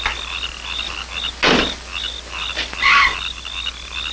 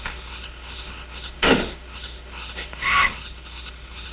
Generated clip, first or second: second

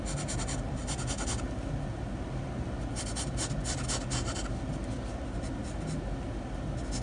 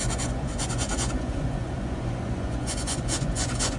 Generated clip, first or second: second